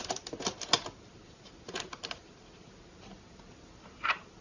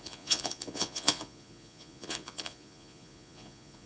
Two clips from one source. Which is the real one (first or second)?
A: first